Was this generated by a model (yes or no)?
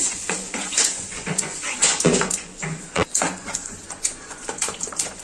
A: yes